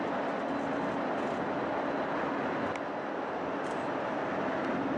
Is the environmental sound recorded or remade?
recorded